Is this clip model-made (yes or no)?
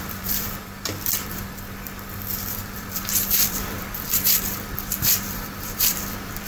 yes